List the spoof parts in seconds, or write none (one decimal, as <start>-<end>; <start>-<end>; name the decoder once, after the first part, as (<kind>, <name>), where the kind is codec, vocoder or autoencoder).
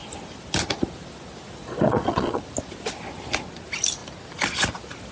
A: 1.6-2.4 (vocoder, Vocos)